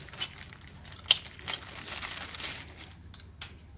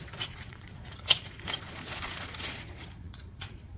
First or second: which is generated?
second